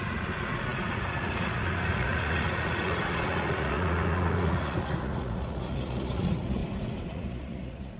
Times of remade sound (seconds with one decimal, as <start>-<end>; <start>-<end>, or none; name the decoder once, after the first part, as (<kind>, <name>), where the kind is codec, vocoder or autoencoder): 0.0-6.6 (vocoder, Vocos); 7.1-8.0